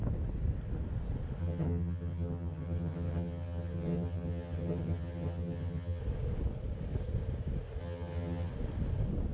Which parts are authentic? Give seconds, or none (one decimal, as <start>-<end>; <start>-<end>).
0.0-1.4; 6.0-7.8; 8.5-9.3